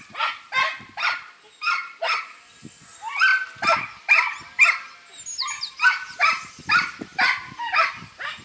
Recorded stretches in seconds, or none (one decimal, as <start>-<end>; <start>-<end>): 0.0-1.8; 2.8-3.3; 6.5-7.1; 7.9-8.4